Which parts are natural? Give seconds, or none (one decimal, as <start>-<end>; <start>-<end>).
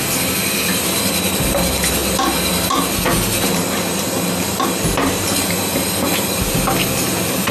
0.0-7.5